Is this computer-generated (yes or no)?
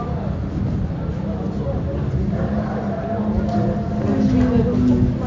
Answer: no